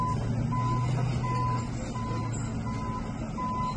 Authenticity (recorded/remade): recorded